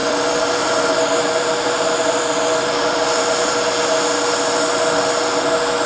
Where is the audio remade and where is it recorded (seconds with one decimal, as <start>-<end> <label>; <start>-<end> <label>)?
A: 0.0-3.5 remade; 3.5-5.9 recorded